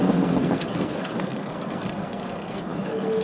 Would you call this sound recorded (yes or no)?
no